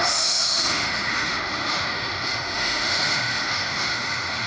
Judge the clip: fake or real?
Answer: fake